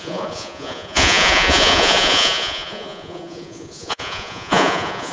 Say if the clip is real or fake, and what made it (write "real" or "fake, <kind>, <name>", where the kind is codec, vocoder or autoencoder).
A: fake, vocoder, Vocos